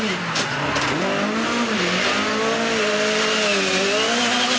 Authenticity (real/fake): real